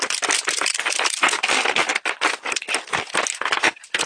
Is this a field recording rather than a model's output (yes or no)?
yes